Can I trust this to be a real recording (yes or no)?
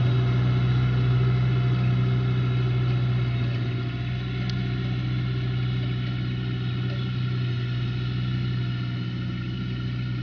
yes